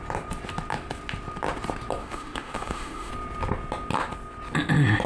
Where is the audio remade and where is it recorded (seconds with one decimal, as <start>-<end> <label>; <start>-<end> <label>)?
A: 0.0-2.0 recorded; 2.0-3.1 remade; 3.1-5.1 recorded